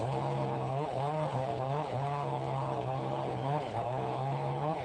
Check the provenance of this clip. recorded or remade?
remade